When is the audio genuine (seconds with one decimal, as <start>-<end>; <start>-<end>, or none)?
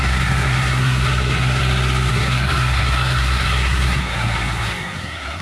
1.6-2.1